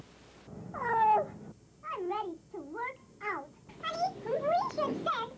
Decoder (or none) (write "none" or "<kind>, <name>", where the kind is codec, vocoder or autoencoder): none